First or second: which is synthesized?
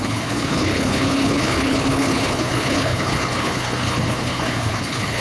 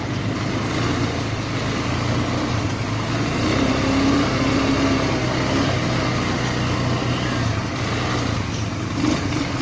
first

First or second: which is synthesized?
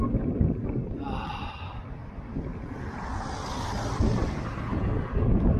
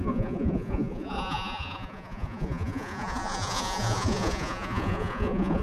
second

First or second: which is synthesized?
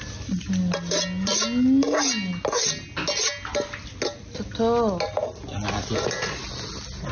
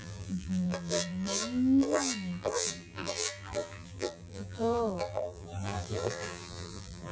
second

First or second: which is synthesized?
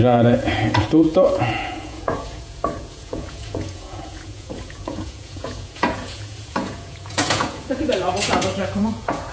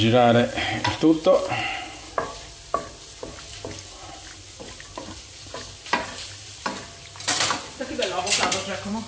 first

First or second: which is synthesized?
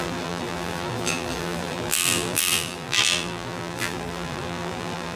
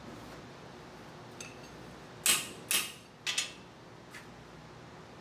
first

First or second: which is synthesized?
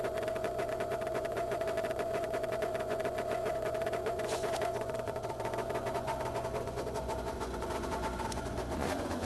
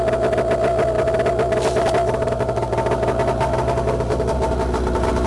first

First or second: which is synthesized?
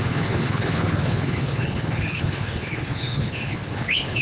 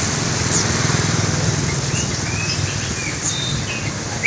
first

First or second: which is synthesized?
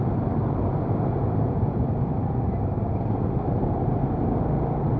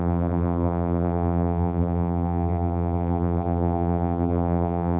second